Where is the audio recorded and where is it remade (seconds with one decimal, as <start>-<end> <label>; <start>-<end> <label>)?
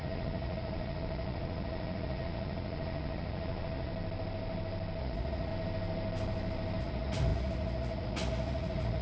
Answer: 0.0-3.9 remade; 3.9-5.0 recorded; 5.0-5.5 remade; 5.5-6.8 recorded; 6.8-9.0 remade